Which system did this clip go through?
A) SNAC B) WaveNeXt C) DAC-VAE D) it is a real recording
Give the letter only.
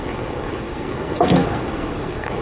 A